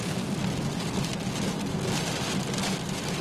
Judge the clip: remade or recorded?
recorded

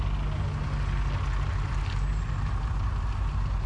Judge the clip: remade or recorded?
recorded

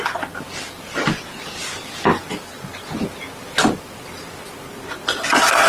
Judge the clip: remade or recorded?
recorded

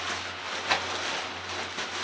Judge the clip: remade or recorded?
recorded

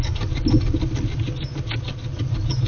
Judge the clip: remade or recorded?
recorded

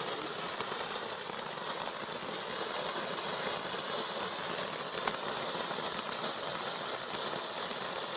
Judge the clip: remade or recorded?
recorded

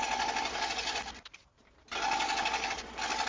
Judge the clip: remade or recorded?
recorded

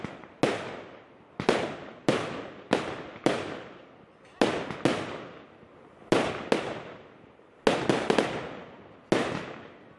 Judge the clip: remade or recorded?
recorded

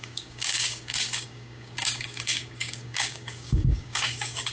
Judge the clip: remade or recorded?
remade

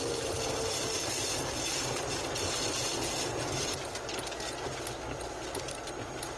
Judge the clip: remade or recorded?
recorded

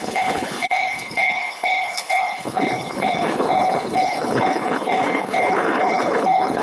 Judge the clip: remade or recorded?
remade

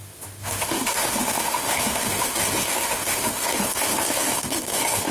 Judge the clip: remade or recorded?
remade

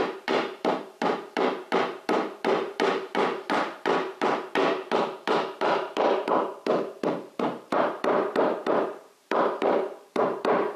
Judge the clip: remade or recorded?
remade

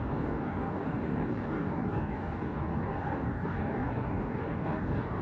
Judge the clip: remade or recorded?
remade